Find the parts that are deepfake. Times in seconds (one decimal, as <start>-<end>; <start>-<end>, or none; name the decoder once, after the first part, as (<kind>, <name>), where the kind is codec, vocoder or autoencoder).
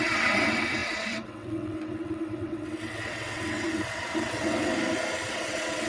0.0-4.7 (vocoder, WaveNeXt); 5.3-5.9